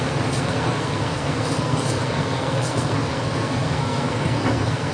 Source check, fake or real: fake